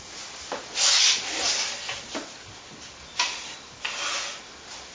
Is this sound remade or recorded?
recorded